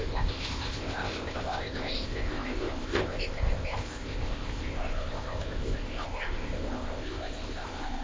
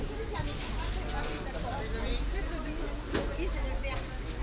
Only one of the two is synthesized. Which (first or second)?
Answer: first